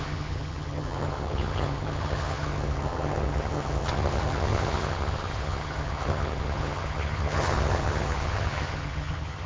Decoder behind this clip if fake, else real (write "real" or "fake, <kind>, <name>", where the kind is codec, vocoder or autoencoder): fake, vocoder, HiFi-GAN